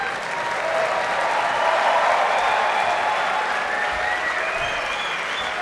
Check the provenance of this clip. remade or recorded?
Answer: recorded